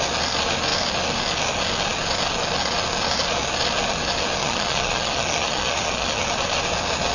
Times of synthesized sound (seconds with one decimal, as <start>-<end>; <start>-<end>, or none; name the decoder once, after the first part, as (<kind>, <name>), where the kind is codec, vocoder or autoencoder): 4.4-6.2 (vocoder, Vocos)